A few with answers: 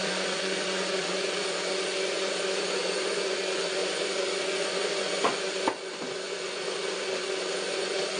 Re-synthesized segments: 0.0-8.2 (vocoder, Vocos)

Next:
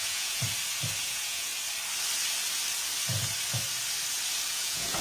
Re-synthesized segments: 0.0-0.4 (vocoder, Vocos); 1.0-1.5; 4.5-5.0

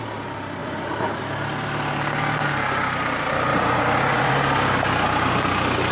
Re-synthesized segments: 0.6-1.2 (vocoder, Vocos); 3.5-4.3

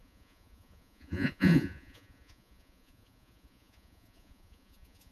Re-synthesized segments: 0.0-5.1 (vocoder, Vocos)